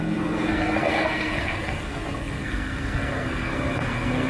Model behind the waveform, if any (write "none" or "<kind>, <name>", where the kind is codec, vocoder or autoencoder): codec, SNAC